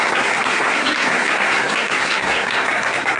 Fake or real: fake